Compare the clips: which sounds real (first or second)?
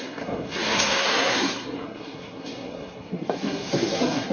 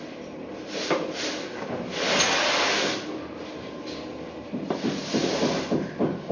second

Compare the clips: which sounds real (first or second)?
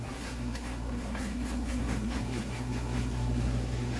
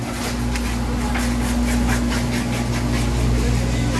second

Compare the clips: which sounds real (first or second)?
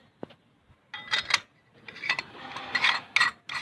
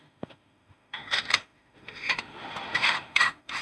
first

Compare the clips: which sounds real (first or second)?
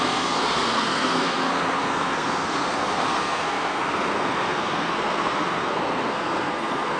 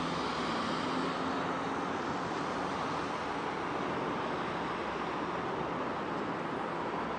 second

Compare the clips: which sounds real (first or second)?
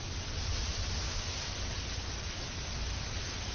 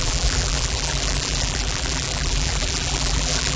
first